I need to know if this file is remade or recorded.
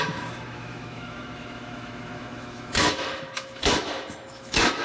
remade